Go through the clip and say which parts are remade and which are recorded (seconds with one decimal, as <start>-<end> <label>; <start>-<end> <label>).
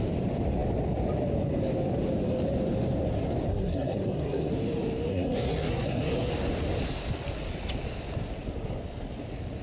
0.0-3.5 recorded; 3.5-4.5 remade; 4.5-5.1 recorded; 5.1-6.3 remade; 6.3-9.6 recorded